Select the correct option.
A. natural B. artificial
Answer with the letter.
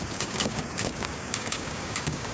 B